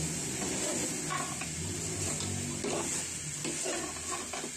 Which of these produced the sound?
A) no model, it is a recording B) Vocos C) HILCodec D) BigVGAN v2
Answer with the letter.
A